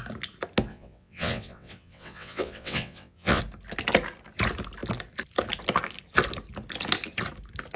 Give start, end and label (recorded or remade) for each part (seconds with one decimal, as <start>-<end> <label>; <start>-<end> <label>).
0.0-0.7 recorded; 0.7-3.4 remade; 3.4-7.8 recorded